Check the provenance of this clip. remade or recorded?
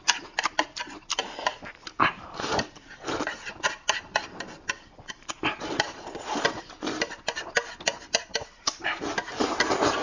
remade